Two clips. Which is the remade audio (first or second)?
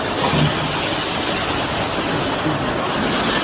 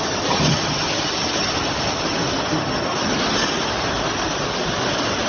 second